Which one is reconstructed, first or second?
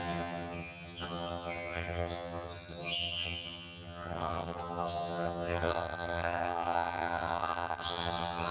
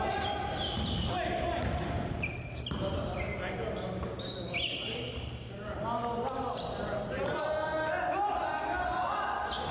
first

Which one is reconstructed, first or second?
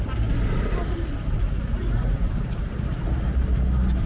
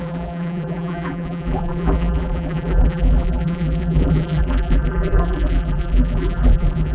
second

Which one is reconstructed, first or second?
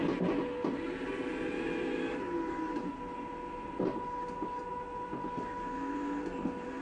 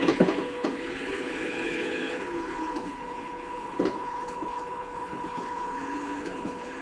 second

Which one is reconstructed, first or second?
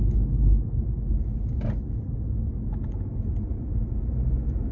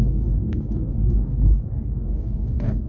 second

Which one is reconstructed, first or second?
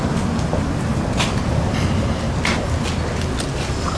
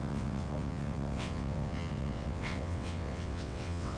second